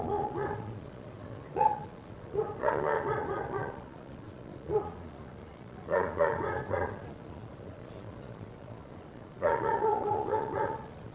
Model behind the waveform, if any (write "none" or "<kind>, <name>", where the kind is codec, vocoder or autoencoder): vocoder, Vocos